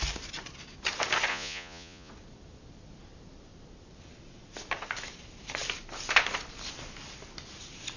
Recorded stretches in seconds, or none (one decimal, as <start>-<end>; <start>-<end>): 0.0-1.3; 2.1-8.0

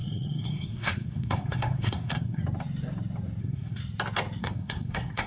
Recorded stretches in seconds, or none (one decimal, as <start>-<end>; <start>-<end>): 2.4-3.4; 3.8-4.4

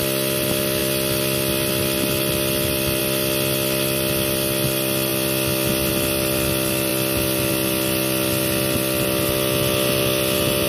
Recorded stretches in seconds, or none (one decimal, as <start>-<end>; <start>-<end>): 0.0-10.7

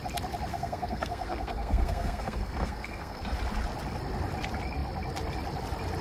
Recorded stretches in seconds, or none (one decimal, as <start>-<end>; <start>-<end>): 0.0-0.5; 3.2-6.0

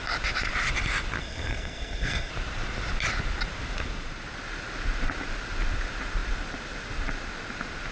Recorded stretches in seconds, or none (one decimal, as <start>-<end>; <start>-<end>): 0.0-1.2; 2.3-7.9

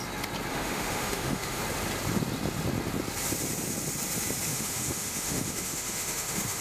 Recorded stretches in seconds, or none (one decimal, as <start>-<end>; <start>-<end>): 0.0-0.5; 1.6-4.5

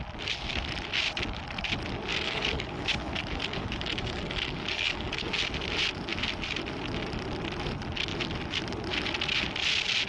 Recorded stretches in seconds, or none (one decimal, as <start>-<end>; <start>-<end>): 0.0-2.1; 5.3-10.1

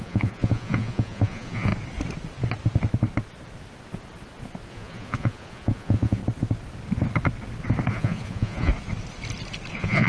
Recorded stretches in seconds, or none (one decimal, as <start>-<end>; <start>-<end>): 1.7-4.7; 6.2-7.9; 8.7-9.7